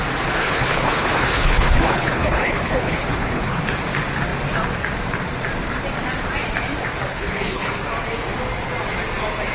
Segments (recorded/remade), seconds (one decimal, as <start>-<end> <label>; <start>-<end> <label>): 0.0-0.4 recorded; 0.4-3.6 remade; 3.6-7.1 recorded; 7.1-7.7 remade; 7.7-9.5 recorded